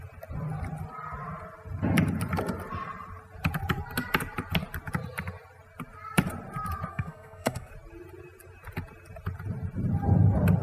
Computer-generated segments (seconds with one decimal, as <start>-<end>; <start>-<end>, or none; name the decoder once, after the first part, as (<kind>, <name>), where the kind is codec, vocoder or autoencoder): 6.9-7.7 (codec, SNAC)